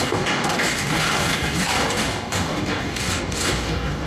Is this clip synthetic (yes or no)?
yes